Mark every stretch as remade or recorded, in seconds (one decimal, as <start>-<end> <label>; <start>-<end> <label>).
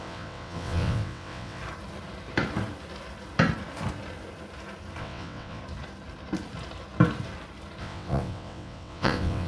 0.0-1.6 remade; 1.6-5.0 recorded; 5.0-5.6 remade; 5.6-7.8 recorded; 7.8-9.5 remade